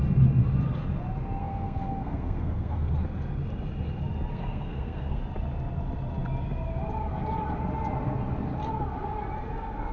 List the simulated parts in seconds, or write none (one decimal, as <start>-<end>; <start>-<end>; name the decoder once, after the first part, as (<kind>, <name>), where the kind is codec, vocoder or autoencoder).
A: 1.4-2.9 (codec, SNAC); 4.3-5.2